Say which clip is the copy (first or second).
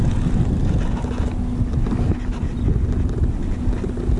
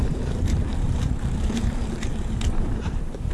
second